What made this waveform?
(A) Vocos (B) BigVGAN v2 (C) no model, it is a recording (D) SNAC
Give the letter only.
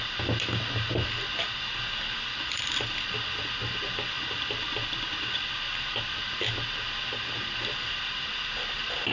C